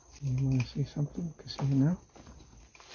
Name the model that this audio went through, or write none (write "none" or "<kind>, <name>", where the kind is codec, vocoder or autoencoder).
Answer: none